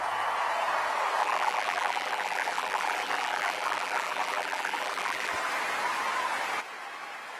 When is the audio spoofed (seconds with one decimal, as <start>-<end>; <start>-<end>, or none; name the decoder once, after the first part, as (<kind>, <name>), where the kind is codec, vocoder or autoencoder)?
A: 1.2-5.3 (vocoder, BigVGAN v2)